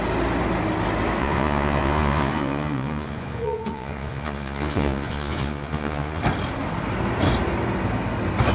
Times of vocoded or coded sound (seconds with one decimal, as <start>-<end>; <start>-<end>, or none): 1.2-6.2